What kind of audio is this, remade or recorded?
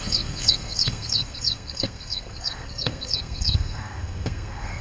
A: remade